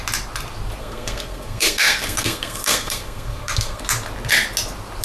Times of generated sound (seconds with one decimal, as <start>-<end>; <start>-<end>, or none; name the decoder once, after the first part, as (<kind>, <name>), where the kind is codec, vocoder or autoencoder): 0.8-3.8 (codec, SNAC)